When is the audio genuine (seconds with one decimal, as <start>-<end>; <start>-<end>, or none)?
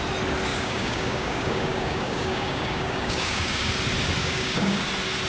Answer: 0.0-0.5; 3.7-4.2; 4.8-5.3